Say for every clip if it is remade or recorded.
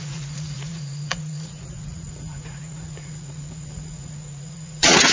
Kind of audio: remade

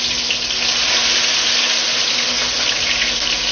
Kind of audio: recorded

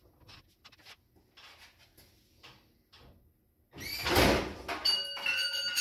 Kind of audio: recorded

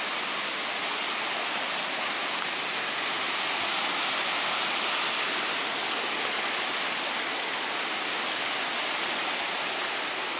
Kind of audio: recorded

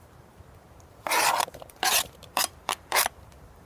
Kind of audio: remade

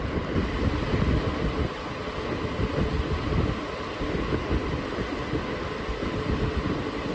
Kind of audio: recorded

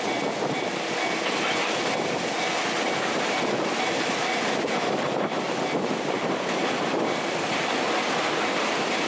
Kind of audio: recorded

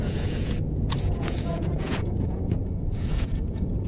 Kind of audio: remade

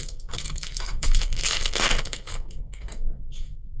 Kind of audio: remade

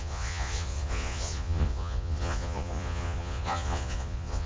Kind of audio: remade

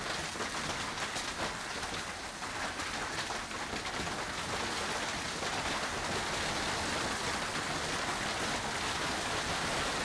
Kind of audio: recorded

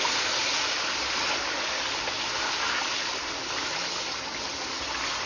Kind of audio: recorded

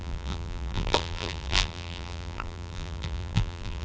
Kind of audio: remade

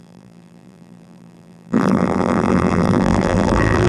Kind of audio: remade